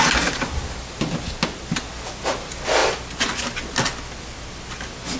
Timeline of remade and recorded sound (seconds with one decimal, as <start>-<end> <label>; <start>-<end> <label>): 0.0-5.2 recorded